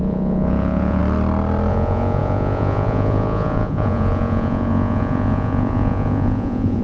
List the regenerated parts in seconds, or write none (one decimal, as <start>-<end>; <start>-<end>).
0.0-1.0; 1.7-6.8